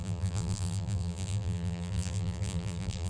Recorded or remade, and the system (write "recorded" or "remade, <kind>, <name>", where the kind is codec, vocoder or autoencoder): remade, vocoder, BigVGAN v2